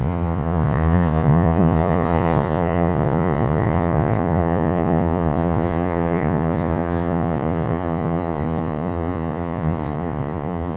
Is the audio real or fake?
fake